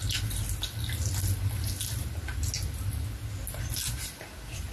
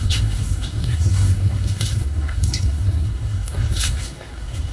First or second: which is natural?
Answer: first